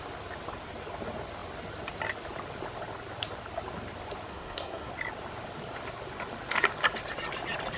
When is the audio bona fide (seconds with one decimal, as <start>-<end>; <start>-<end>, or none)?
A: 0.0-4.3; 4.9-7.8